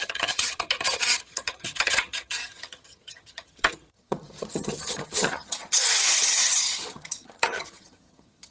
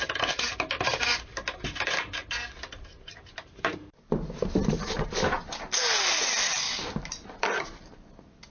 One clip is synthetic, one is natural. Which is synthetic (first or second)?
first